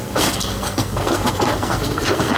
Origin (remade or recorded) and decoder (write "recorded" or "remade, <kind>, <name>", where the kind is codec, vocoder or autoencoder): remade, codec, SNAC